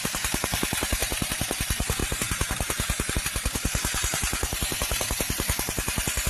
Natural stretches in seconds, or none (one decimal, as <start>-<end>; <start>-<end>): 0.0-6.3